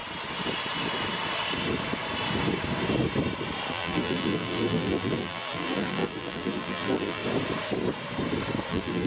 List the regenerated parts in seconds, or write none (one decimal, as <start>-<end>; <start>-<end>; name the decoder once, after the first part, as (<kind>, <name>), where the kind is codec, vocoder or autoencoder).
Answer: 3.7-7.2 (vocoder, BigVGAN v2); 8.7-9.1